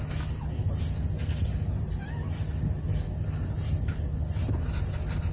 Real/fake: real